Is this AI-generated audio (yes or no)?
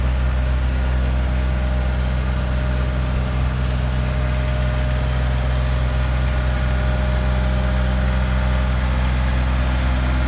no